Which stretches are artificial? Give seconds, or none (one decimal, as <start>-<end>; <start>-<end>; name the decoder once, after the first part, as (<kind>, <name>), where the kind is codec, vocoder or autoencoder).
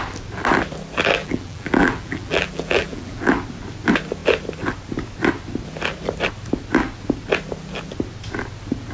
1.2-3.2 (vocoder, BigVGAN v2)